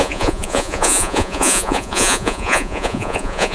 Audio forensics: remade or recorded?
remade